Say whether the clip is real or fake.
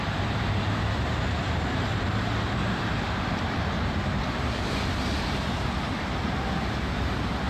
fake